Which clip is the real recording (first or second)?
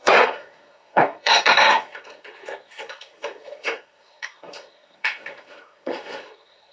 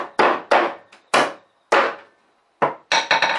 second